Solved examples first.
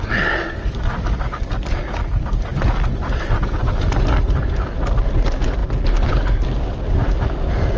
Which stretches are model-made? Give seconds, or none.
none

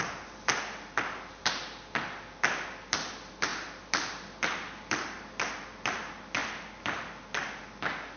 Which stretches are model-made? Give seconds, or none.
none

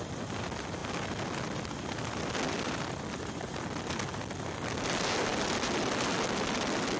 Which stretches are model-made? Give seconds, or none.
none

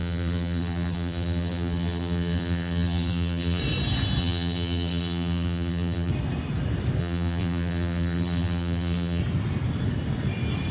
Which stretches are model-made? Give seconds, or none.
0.0-3.6 (vocoder, BigVGAN v2); 4.2-6.1; 7.0-9.2

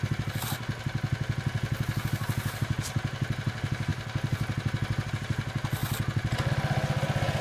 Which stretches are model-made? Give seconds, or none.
none